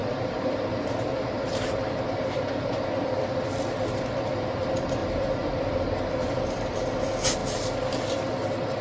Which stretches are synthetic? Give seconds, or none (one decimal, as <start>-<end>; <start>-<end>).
0.0-2.8; 5.0-5.8